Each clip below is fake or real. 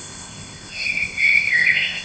fake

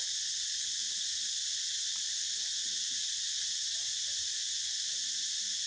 real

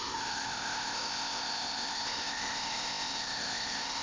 fake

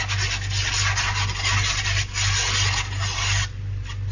real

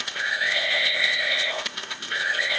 fake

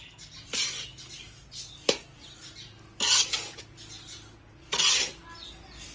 real